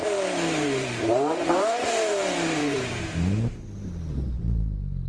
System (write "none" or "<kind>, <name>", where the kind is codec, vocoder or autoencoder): vocoder, BigVGAN v2